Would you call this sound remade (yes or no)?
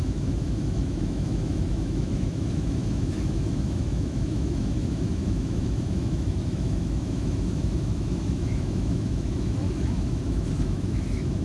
yes